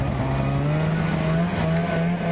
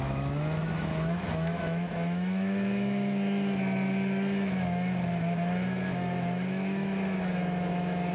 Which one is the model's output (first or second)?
second